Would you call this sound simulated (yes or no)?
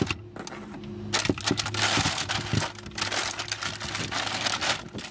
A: no